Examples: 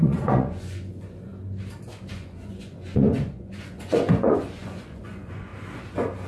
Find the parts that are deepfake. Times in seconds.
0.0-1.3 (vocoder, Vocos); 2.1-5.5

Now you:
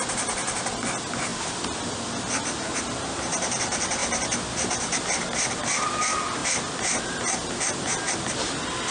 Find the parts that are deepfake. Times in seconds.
none

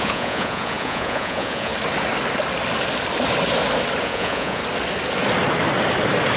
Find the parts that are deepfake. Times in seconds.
0.0-1.7 (vocoder, Vocos); 4.0-4.6

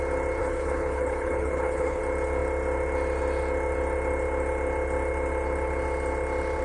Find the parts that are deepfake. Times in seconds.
0.4-2.0 (codec, HILCodec)

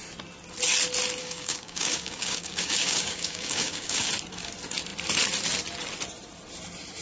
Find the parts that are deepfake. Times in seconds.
1.2-4.1 (codec, DAC)

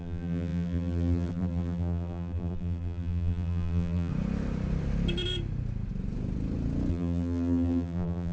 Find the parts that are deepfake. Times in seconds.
0.0-4.1 (vocoder, BigVGAN v2); 6.9-8.3

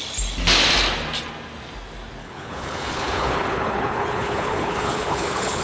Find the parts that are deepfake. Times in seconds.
2.2-5.6 (codec, HILCodec)

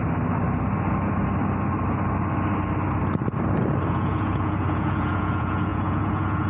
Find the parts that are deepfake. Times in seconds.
3.9-6.5 (vocoder, Vocos)